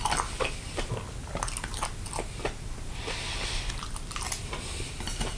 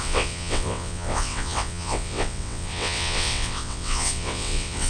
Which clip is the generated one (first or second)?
second